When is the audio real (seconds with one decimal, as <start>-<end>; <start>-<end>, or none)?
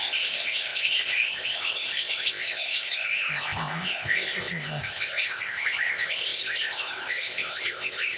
none